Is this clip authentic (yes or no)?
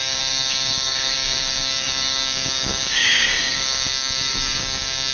no